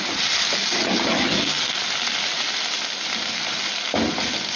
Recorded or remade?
recorded